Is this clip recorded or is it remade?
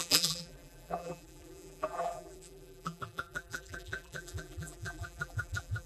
remade